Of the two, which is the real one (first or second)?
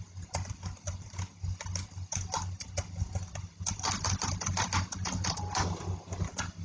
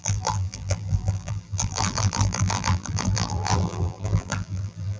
first